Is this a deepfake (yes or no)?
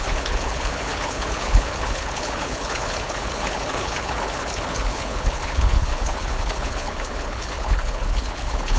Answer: yes